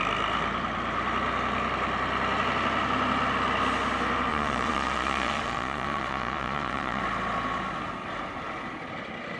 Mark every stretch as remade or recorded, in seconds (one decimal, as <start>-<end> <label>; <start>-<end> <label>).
0.0-4.3 recorded; 4.3-7.0 remade; 7.0-9.4 recorded